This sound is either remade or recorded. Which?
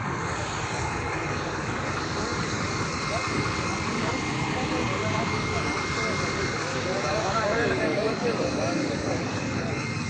remade